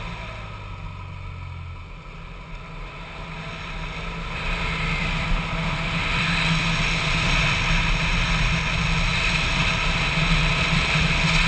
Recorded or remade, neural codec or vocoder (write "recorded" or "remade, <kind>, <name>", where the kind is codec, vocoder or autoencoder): recorded